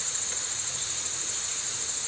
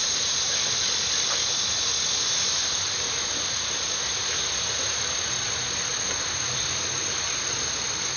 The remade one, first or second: first